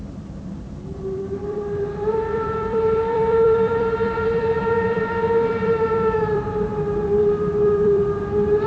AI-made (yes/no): yes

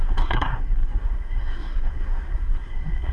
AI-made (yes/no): yes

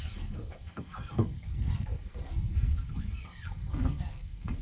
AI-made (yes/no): yes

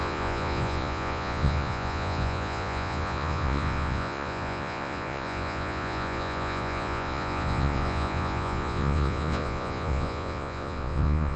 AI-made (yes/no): yes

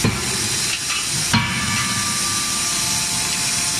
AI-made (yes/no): no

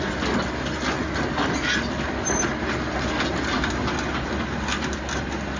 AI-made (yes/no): no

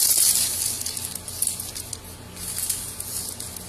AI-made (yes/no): no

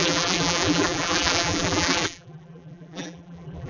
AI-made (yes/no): yes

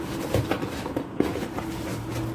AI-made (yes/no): no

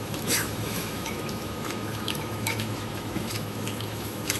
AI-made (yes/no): yes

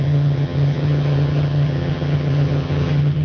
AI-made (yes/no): yes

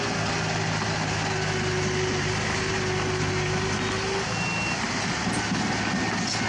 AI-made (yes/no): no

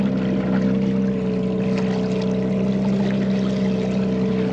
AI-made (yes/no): no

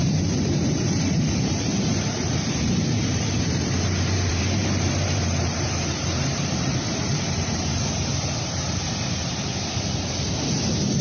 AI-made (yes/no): yes